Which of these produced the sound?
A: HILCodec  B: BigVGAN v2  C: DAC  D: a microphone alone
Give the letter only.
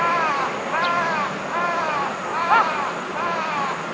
D